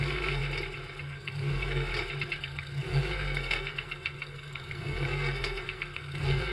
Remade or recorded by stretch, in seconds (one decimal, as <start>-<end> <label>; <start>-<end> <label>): 0.0-0.4 remade; 0.4-1.0 recorded; 1.0-1.9 remade; 1.9-2.4 recorded; 2.4-6.5 remade